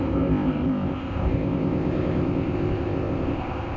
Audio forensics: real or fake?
fake